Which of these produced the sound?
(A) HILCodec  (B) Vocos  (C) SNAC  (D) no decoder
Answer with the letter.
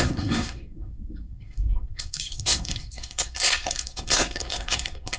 C